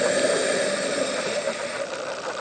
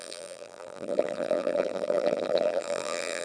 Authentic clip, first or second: first